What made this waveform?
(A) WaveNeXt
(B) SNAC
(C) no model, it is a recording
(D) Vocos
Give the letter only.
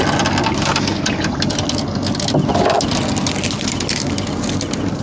C